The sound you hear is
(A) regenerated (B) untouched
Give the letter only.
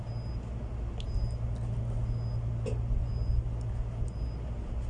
B